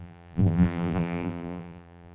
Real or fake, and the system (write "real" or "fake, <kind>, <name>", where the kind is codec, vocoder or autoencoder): fake, vocoder, BigVGAN v2